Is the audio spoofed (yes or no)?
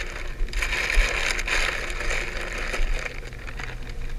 no